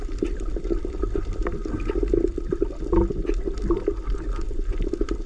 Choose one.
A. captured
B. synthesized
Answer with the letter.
A